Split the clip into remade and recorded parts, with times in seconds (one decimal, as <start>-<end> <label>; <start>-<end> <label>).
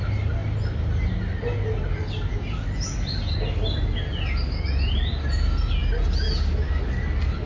0.0-7.5 recorded